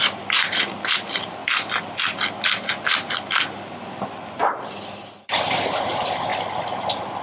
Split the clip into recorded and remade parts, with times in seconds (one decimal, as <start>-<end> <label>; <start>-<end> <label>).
0.0-1.4 remade; 1.4-4.4 recorded; 4.4-6.3 remade; 6.3-7.2 recorded